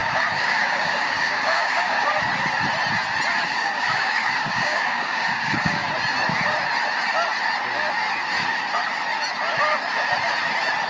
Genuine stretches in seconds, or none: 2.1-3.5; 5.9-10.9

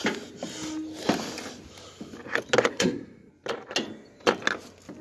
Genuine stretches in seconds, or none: 0.0-2.7; 3.3-5.0

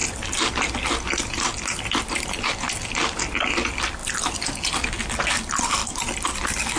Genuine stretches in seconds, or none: 0.0-6.8

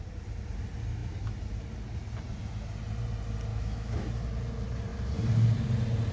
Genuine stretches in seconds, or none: 0.0-3.5; 4.1-6.1

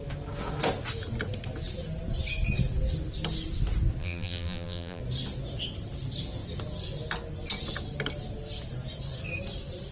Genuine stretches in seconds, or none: 0.0-4.0; 5.0-9.9

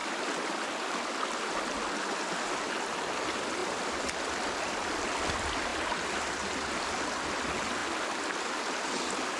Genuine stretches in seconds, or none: 1.5-3.6; 4.9-5.7; 6.5-7.8; 8.4-9.4

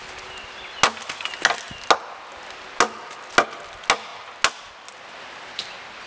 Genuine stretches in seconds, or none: 0.0-6.1